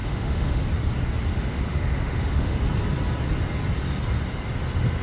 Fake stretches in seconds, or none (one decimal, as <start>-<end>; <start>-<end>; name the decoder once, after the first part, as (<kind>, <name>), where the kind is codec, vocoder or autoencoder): 0.0-0.6 (autoencoder, DAC-VAE); 1.3-2.6

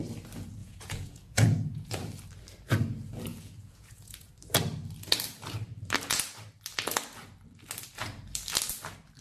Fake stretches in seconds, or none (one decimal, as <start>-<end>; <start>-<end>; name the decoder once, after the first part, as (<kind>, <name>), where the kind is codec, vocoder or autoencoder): 0.6-1.9 (vocoder, Vocos); 3.3-4.3

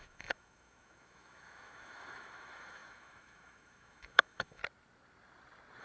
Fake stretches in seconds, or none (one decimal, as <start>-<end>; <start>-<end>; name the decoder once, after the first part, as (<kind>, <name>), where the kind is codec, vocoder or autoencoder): 0.0-4.6 (autoencoder, DAC-VAE)

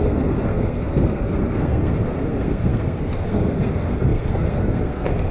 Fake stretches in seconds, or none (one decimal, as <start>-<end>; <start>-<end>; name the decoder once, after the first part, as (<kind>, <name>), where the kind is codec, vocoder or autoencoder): 0.0-5.3 (codec, SNAC)

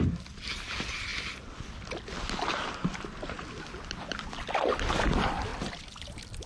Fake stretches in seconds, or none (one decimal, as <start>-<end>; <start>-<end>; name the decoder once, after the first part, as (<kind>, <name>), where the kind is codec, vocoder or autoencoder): none